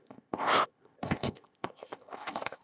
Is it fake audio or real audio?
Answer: fake